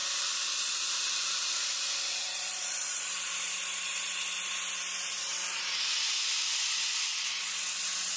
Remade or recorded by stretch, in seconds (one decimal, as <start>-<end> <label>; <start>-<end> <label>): 0.0-1.5 remade; 1.5-2.2 recorded; 2.2-4.1 remade; 4.1-8.2 recorded